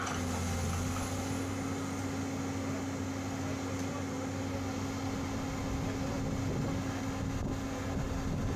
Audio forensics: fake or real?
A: real